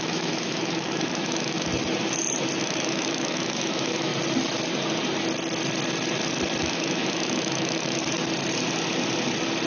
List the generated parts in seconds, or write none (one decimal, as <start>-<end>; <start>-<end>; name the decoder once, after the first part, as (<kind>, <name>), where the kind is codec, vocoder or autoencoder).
0.0-1.7 (autoencoder, DAC-VAE); 2.6-4.1; 6.6-8.0